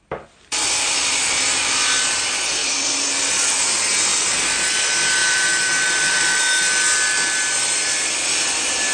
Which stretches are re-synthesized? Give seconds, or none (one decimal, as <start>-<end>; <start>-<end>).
1.6-2.2; 2.6-3.1; 4.1-4.7; 5.2-6.4